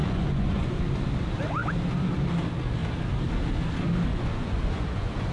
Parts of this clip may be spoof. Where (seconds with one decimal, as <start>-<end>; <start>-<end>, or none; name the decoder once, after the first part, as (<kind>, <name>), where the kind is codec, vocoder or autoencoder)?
0.0-0.8 (vocoder, Vocos); 4.1-5.3